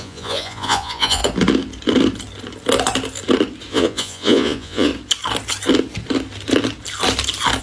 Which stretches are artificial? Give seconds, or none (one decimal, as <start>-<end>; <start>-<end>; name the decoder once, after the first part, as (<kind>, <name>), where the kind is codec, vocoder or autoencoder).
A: 0.0-1.2 (vocoder, Vocos); 3.7-4.9